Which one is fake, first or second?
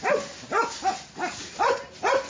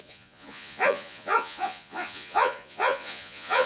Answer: second